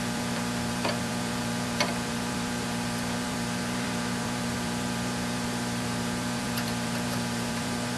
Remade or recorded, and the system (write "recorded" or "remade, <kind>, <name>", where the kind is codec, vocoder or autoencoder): remade, vocoder, BigVGAN v2